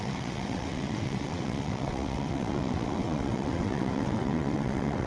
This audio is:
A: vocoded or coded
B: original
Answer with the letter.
A